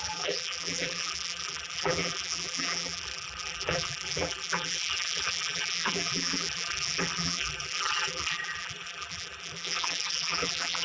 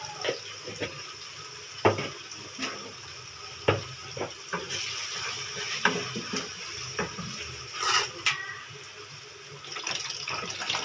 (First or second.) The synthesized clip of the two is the first